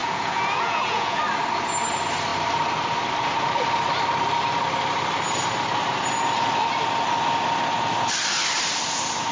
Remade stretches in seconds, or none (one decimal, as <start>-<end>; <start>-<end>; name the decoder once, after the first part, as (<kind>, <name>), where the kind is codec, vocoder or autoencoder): 0.0-1.2 (vocoder, Vocos)